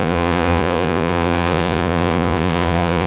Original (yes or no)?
no